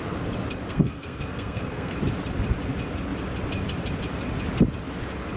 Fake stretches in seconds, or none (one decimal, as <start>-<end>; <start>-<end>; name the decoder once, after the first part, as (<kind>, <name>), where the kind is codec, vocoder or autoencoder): 0.7-2.0 (codec, SNAC)